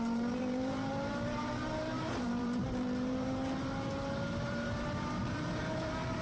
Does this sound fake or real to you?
fake